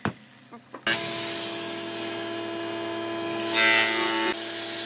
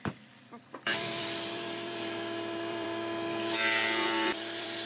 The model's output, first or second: second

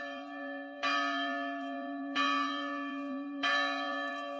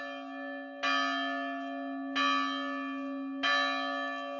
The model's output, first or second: first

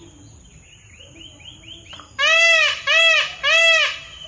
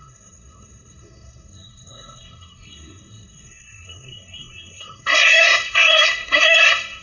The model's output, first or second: second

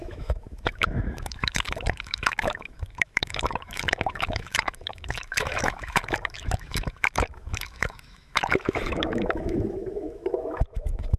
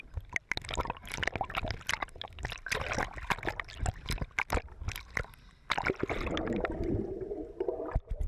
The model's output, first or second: first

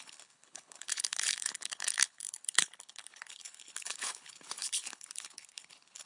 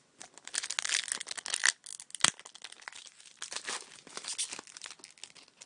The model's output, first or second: first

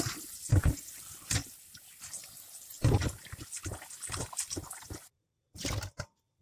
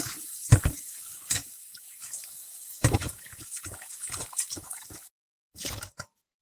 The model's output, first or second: second